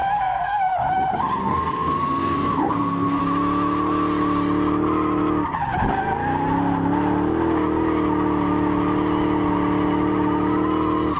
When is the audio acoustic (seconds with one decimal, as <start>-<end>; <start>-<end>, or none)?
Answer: 0.7-1.4; 3.2-11.2